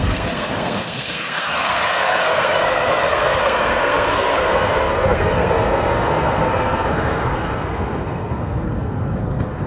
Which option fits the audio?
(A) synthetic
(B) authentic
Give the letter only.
A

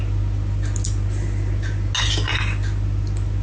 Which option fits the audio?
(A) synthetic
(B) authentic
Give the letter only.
B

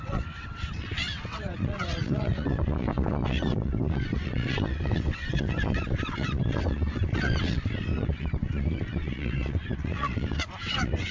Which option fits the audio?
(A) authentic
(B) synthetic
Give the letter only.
B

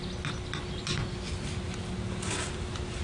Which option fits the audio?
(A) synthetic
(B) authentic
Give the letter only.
B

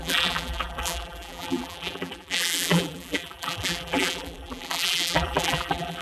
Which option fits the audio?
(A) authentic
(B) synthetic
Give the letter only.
B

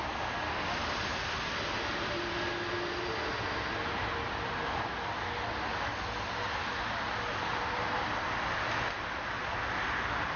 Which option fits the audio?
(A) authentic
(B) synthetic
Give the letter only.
A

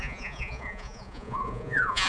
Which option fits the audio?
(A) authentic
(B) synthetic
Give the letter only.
B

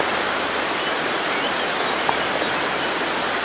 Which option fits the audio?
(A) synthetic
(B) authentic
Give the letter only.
B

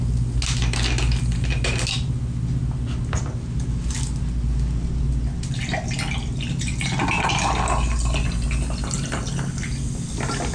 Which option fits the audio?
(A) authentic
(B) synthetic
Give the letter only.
A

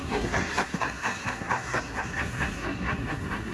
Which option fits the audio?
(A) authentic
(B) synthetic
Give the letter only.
B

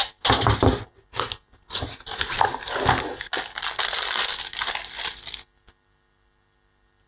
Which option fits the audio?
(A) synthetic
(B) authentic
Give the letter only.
B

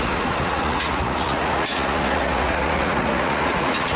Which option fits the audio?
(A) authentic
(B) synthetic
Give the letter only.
B